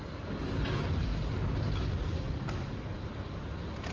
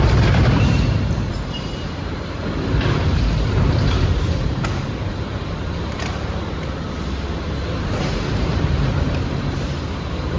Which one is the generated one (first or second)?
second